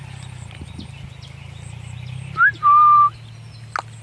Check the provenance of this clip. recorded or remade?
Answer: recorded